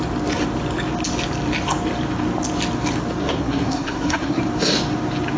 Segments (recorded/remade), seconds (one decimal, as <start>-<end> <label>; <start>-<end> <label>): 0.0-3.2 recorded; 3.2-4.4 remade; 4.4-5.4 recorded